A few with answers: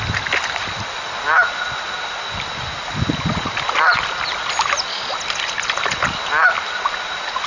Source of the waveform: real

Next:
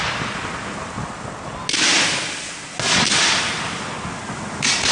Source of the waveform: real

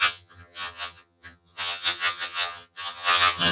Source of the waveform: fake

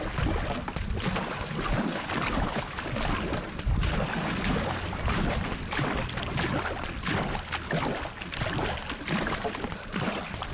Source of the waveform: real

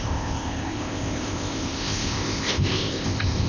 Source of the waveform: fake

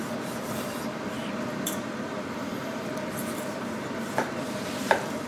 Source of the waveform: fake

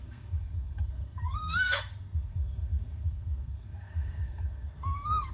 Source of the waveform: fake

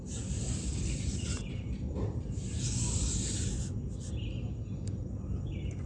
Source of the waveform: real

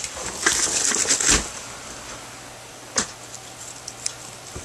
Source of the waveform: real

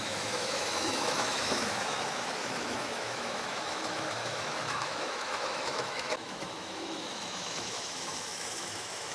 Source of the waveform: fake